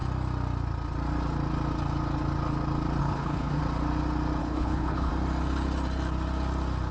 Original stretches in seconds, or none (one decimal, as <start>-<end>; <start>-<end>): 0.0-3.0; 3.6-4.4; 5.1-6.9